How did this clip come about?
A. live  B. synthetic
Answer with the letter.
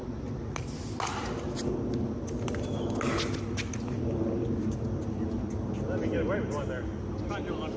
A